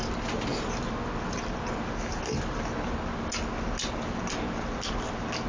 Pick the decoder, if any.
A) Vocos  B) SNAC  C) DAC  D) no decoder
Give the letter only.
D